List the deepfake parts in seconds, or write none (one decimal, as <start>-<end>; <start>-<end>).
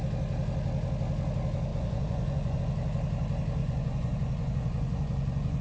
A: 1.7-2.6; 3.6-5.6